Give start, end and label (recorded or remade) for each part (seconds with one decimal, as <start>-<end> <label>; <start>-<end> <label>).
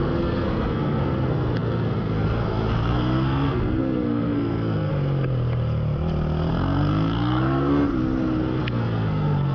0.0-4.9 remade; 4.9-6.5 recorded; 6.5-7.9 remade; 7.9-8.6 recorded; 8.6-9.5 remade